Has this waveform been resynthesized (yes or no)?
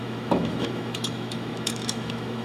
yes